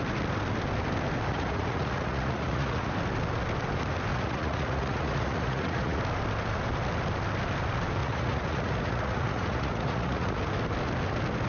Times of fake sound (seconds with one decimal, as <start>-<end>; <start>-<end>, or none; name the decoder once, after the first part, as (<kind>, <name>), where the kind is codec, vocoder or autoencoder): 1.3-2.9 (vocoder, Vocos); 4.1-6.0; 8.0-10.4